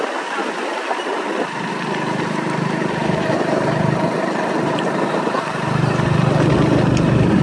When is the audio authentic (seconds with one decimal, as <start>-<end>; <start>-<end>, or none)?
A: 0.0-3.0; 5.9-7.4